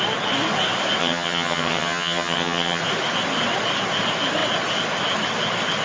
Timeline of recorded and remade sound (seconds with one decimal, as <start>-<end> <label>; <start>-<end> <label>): 0.0-1.0 recorded; 1.0-2.8 remade; 2.8-5.8 recorded